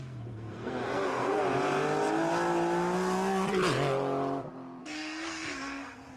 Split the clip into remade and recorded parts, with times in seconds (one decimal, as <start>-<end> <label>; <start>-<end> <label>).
0.0-1.4 remade; 1.4-4.8 recorded; 4.8-6.2 remade

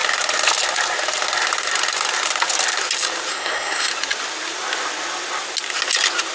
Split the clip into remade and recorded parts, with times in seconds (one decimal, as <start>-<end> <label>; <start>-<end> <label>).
0.0-3.3 recorded; 3.3-3.9 remade; 3.9-6.3 recorded

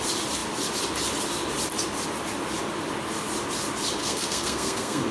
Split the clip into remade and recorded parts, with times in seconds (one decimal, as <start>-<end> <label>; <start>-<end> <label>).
0.0-4.0 recorded; 4.0-5.1 remade

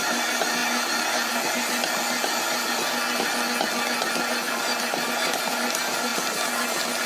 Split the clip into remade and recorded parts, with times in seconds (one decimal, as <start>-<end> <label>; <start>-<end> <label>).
0.0-7.1 recorded

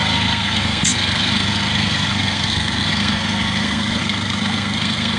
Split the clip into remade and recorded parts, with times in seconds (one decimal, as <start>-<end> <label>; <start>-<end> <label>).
0.0-5.2 remade

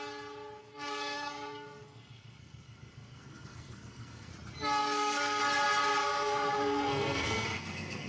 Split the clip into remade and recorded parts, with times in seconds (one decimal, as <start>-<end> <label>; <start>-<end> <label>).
0.0-0.6 recorded; 0.6-4.3 remade; 4.3-4.8 recorded; 4.8-5.4 remade; 5.4-6.0 recorded; 6.0-8.1 remade

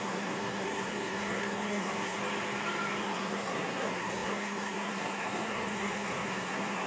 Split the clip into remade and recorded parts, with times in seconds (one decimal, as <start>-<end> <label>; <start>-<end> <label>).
0.0-2.2 remade; 2.2-3.0 recorded; 3.0-6.9 remade

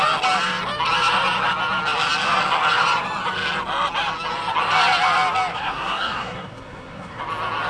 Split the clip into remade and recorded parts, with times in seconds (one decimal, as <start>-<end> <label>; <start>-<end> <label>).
0.0-5.5 recorded; 5.5-7.2 remade; 7.2-7.7 recorded